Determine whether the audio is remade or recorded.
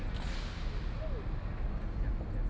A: recorded